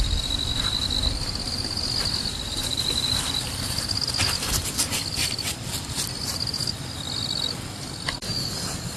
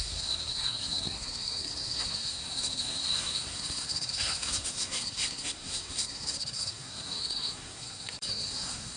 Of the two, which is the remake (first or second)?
second